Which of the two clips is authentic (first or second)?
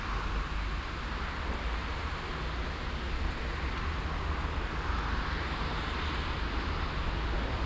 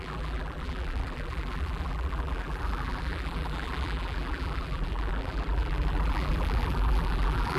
first